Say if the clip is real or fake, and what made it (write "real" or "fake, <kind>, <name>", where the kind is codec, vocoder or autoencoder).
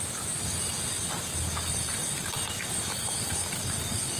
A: real